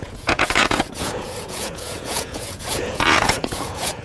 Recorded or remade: remade